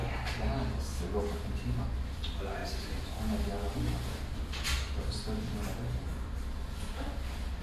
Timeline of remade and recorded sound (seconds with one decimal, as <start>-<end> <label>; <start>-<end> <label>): 0.0-7.6 recorded